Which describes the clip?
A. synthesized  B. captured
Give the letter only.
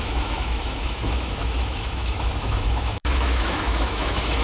A